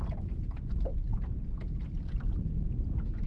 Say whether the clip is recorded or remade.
recorded